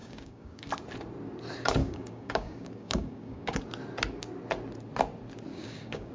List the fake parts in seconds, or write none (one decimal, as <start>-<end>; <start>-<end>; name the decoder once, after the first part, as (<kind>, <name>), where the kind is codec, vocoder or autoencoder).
0.0-0.7 (codec, DAC); 1.8-3.6; 5.5-6.1